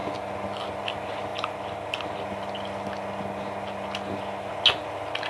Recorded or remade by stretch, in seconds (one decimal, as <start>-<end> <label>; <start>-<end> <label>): 0.0-5.3 recorded